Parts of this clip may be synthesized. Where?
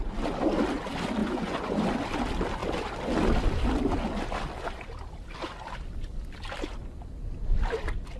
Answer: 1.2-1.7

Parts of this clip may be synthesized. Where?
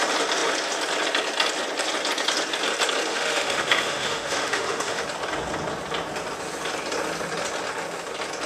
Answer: 3.1-5.0